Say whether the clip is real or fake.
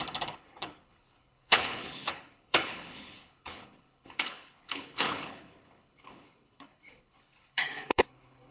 fake